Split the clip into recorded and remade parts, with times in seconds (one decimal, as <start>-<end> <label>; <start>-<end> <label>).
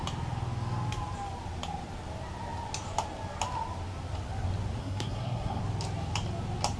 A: 0.0-4.8 recorded; 4.8-5.6 remade; 5.6-6.8 recorded